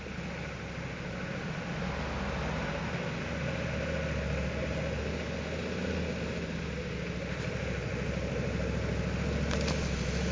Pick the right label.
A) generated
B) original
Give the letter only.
B